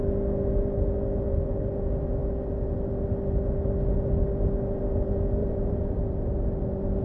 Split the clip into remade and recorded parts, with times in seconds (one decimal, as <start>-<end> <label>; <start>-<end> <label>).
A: 0.0-5.4 recorded; 5.4-6.1 remade; 6.1-7.0 recorded